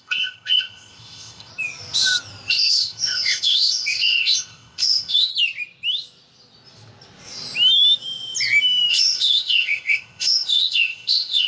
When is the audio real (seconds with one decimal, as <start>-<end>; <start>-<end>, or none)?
1.5-2.5; 5.3-8.9